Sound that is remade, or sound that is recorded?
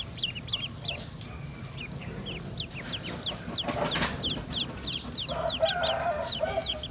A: recorded